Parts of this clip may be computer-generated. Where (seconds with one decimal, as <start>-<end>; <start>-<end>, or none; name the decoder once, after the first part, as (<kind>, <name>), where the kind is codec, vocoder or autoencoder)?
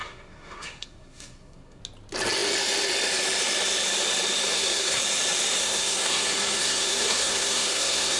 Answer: 0.0-1.8 (codec, SNAC); 4.5-5.0; 5.6-8.2